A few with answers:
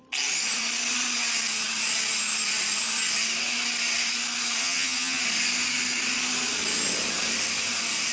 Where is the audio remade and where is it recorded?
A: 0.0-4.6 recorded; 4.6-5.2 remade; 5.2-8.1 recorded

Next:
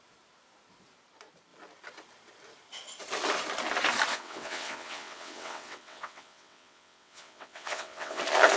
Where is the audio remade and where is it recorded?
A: 0.0-4.1 recorded; 4.1-8.2 remade; 8.2-8.6 recorded

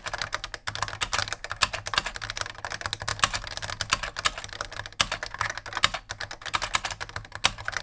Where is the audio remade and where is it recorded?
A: 0.0-7.8 recorded

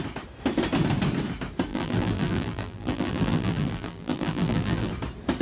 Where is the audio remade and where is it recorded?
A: 0.0-1.7 recorded; 1.7-4.9 remade; 4.9-5.4 recorded

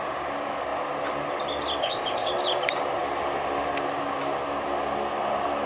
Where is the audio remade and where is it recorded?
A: 0.0-1.8 recorded; 1.8-2.3 remade; 2.3-5.7 recorded

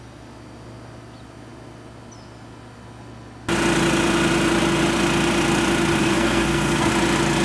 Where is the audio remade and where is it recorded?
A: 0.0-6.0 recorded; 6.0-6.9 remade; 6.9-7.4 recorded

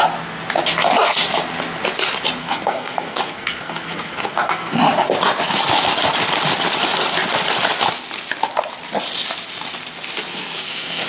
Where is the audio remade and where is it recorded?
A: 0.0-2.4 recorded; 2.4-4.8 remade; 4.8-10.3 recorded; 10.3-11.1 remade

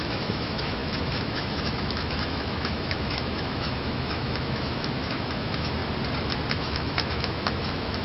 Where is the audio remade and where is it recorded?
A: 0.0-5.8 remade; 5.8-6.5 recorded; 6.5-8.0 remade